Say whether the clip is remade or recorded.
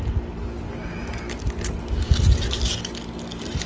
recorded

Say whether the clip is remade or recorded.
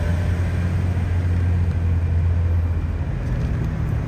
recorded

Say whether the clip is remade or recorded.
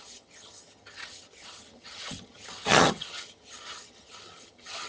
remade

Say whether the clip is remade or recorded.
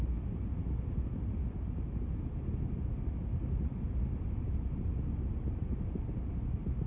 recorded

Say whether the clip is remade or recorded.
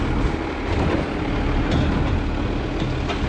recorded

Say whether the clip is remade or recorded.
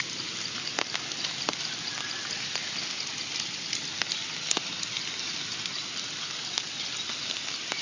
recorded